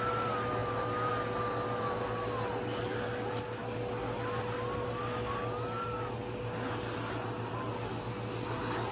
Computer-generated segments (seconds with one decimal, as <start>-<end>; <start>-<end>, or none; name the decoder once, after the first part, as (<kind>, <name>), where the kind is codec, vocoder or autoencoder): none